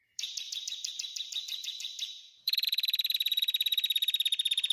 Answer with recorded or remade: remade